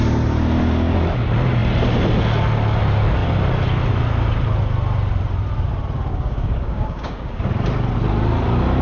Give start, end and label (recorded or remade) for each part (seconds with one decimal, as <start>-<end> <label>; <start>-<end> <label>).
0.0-6.1 recorded; 6.1-7.4 remade; 7.4-8.8 recorded